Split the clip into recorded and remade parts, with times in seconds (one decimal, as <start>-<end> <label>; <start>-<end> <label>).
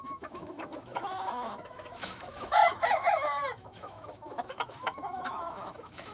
0.0-6.1 remade